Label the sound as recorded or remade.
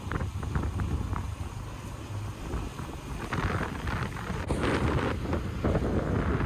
recorded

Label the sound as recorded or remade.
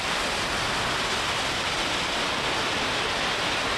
recorded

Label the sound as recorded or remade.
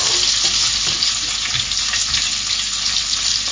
recorded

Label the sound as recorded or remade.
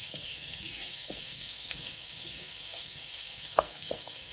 remade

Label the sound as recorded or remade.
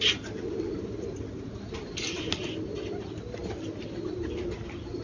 recorded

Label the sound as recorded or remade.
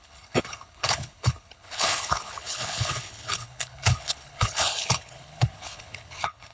remade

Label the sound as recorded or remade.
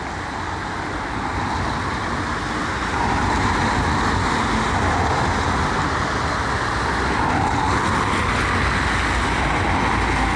recorded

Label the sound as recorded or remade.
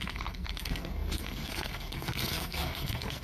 remade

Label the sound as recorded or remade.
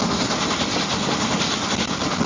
recorded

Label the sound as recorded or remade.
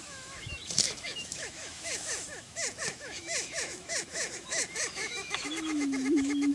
remade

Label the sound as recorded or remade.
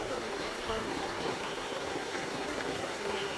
remade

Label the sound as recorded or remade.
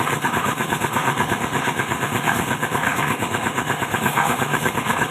remade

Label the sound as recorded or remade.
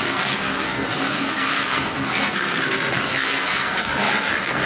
remade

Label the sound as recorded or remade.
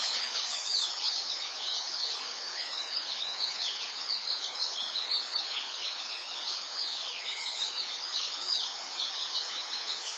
remade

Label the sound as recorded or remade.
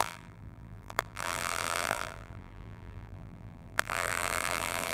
remade